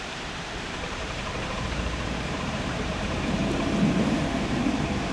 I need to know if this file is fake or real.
fake